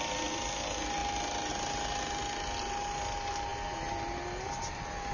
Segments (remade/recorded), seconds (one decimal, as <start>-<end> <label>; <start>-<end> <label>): 0.0-5.1 recorded

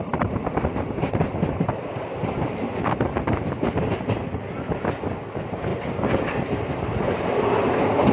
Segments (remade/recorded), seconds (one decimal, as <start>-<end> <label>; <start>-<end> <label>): 0.0-8.1 recorded

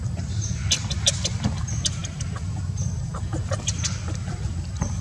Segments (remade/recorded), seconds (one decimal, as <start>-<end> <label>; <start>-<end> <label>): 0.0-5.0 recorded